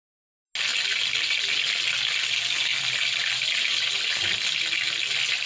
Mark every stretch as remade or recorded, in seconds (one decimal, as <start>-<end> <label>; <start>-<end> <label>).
0.0-5.5 recorded